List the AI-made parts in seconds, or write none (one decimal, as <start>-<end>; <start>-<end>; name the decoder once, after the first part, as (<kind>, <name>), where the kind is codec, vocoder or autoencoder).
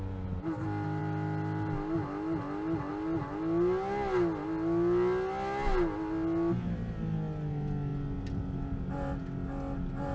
none